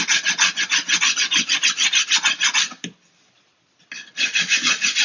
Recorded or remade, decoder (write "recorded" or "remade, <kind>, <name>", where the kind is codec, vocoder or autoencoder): recorded